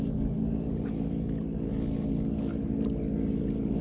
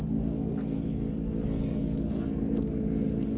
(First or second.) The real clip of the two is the first